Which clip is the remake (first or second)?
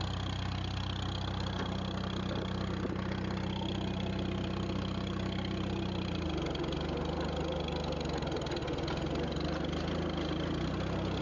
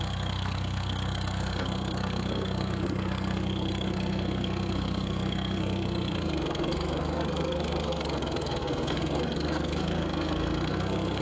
second